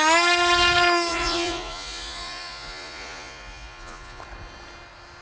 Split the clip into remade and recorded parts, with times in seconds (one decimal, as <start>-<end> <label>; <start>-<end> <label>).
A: 0.0-1.1 recorded; 1.1-4.2 remade; 4.2-5.2 recorded